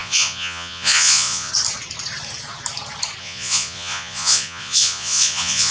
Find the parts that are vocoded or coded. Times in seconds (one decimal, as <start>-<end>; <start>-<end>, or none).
0.0-1.5; 3.2-5.7